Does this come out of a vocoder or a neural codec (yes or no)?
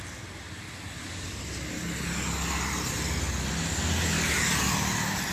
no